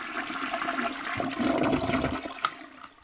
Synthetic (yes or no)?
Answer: no